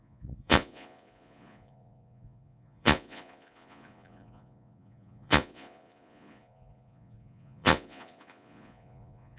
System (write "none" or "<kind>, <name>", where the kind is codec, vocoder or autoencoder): vocoder, Vocos